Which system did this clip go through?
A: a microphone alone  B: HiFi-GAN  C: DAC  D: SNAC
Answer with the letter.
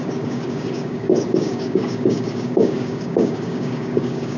C